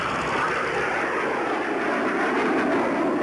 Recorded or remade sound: recorded